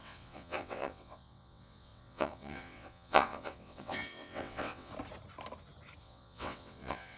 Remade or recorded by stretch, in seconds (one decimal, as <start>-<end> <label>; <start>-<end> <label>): 0.0-4.9 remade; 4.9-6.0 recorded; 6.0-7.2 remade

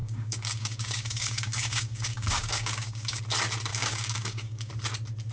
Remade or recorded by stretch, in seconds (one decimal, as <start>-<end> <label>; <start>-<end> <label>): 0.0-3.2 remade; 3.2-3.7 recorded; 3.7-4.7 remade; 4.7-5.3 recorded

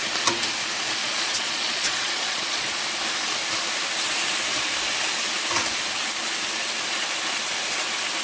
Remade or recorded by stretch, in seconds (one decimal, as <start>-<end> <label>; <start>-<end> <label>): 0.0-1.0 recorded; 1.0-2.8 remade; 2.8-8.2 recorded

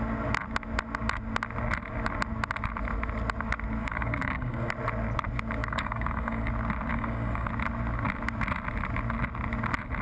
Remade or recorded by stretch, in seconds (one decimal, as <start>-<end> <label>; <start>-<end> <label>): 0.0-3.8 recorded; 3.8-4.7 remade; 4.7-5.6 recorded; 5.6-6.5 remade; 6.5-6.9 recorded; 6.9-7.5 remade; 7.5-10.0 recorded

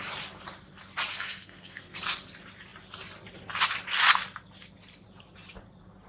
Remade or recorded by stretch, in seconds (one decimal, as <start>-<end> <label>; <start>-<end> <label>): 0.0-1.1 recorded; 1.1-2.0 remade; 2.0-6.1 recorded